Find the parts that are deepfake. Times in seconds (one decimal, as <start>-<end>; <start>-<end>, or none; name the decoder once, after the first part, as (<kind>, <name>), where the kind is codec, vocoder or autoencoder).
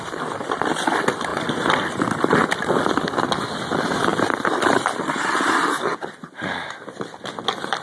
1.3-1.9 (vocoder, BigVGAN v2); 4.1-5.7